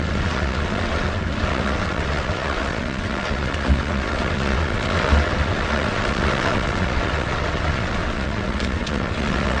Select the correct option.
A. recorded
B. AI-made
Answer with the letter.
B